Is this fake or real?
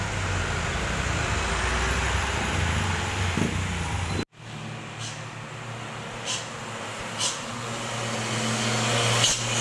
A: real